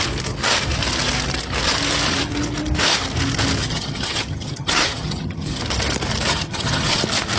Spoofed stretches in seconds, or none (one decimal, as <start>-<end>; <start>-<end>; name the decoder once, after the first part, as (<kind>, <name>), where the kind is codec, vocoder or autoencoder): 3.6-5.6 (vocoder, HiFi-GAN); 6.3-7.0